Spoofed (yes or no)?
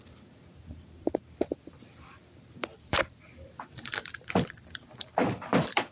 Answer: yes